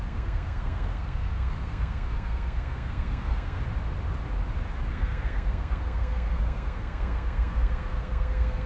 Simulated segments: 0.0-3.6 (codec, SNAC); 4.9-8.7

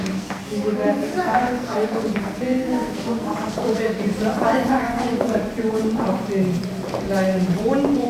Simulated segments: 0.0-4.0 (codec, SNAC); 4.7-5.4

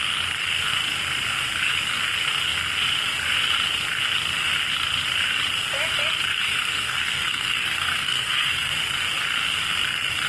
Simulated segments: 6.3-8.7 (codec, SNAC)

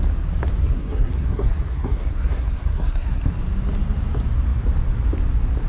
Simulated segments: 0.6-3.3 (codec, SNAC)

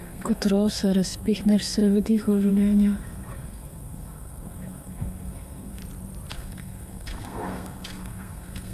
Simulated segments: 0.0-5.8 (codec, SNAC); 6.3-8.7

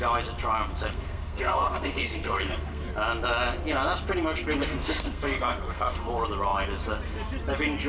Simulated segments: 0.9-2.9 (codec, SNAC); 4.4-6.1

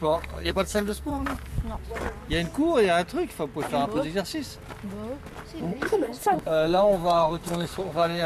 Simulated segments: 0.0-1.1 (codec, SNAC); 5.6-8.3

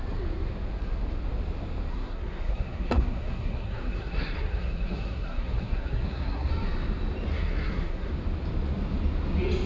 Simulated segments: 1.9-6.5 (codec, SNAC); 7.3-8.1